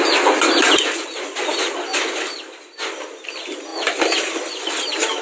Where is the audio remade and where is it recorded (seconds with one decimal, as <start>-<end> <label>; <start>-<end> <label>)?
0.0-5.2 recorded